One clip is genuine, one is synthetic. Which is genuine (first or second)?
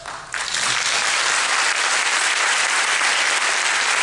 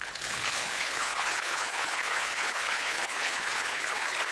first